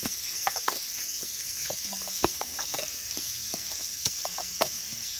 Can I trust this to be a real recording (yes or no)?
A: no